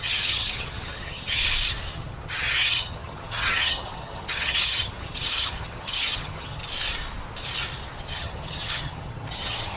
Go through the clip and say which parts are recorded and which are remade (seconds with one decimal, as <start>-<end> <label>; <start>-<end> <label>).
0.0-1.4 remade; 1.4-1.9 recorded; 1.9-6.6 remade; 6.6-8.0 recorded; 8.0-9.8 remade